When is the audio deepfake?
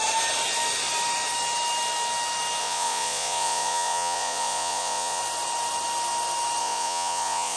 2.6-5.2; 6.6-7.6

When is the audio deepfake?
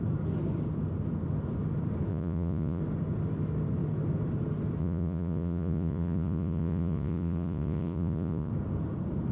2.1-2.8; 4.8-8.5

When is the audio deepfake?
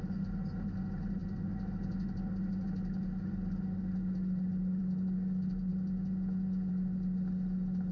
5.7-6.7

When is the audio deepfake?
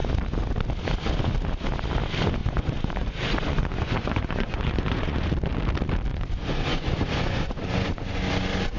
2.4-5.3; 6.1-8.2